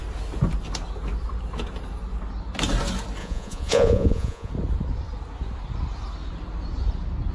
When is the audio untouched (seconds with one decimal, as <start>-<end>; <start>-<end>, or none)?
0.0-3.2; 4.5-7.3